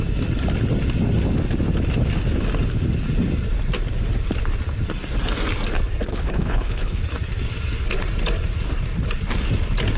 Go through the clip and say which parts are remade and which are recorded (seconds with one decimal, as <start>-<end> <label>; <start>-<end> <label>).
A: 0.0-6.1 recorded; 6.1-7.0 remade; 7.0-10.0 recorded